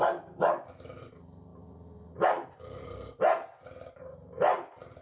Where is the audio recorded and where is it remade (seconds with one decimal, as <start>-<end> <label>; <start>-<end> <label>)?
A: 0.0-5.0 recorded